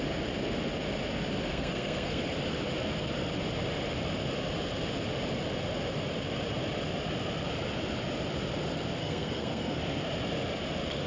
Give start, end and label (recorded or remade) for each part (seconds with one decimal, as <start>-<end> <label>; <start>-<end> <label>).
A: 0.0-1.5 recorded; 1.5-2.2 remade; 2.2-9.0 recorded; 9.0-9.8 remade; 9.8-11.1 recorded

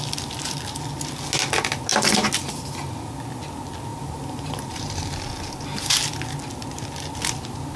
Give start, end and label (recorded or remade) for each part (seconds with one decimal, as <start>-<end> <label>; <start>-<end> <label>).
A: 0.0-3.9 recorded; 3.9-5.3 remade; 5.3-7.8 recorded

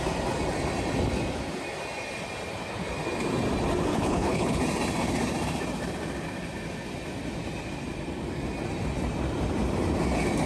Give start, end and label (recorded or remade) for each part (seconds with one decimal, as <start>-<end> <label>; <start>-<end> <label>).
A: 0.0-3.9 recorded; 3.9-4.6 remade; 4.6-10.5 recorded

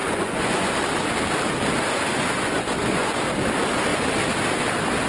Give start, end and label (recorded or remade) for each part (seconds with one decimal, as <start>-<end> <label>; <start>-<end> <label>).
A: 0.0-0.7 remade; 0.7-2.1 recorded; 2.1-3.2 remade; 3.2-5.1 recorded

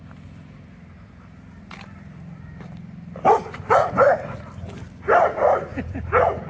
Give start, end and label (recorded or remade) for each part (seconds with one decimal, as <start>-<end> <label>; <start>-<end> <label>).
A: 0.0-5.7 recorded; 5.7-6.5 remade

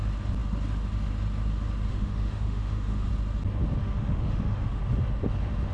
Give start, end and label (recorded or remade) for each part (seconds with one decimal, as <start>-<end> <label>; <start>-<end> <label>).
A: 0.0-1.9 recorded; 1.9-3.1 remade; 3.1-3.8 recorded; 3.8-4.8 remade; 4.8-5.7 recorded